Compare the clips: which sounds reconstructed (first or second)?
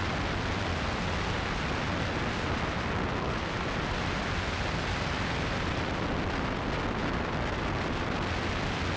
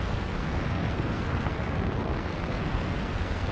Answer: second